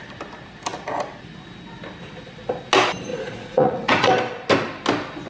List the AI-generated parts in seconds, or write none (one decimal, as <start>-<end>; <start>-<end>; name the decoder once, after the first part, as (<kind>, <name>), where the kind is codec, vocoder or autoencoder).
3.1-4.1 (vocoder, Vocos)